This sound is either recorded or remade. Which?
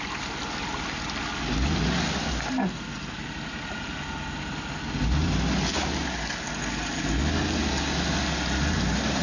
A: recorded